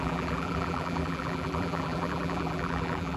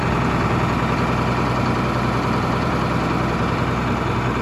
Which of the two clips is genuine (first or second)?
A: second